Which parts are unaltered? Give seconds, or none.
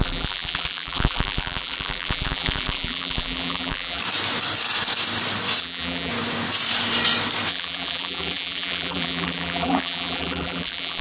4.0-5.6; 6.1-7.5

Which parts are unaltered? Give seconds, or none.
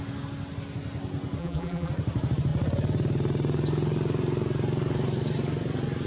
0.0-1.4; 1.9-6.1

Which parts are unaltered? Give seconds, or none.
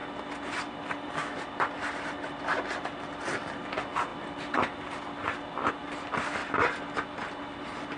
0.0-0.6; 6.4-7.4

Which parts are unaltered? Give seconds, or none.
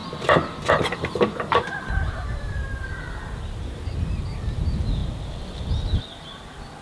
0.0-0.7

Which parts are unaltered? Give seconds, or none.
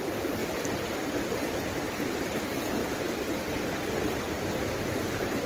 none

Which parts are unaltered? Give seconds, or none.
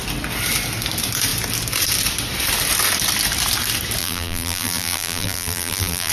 0.0-4.0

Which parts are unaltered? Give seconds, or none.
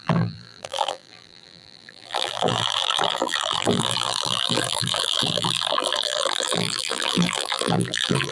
none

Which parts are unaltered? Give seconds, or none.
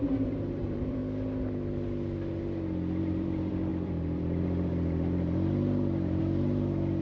1.0-3.0